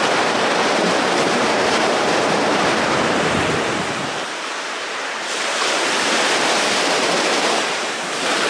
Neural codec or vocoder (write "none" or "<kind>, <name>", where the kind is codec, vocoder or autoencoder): vocoder, BigVGAN v2